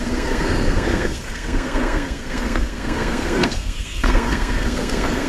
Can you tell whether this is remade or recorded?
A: remade